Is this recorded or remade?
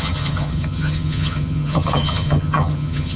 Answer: remade